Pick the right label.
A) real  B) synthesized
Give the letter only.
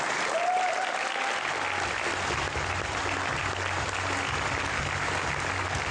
A